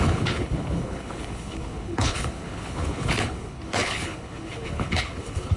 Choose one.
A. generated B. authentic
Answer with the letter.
A